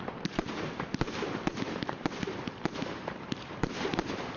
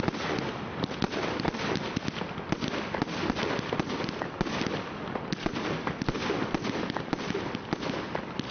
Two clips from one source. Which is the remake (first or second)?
first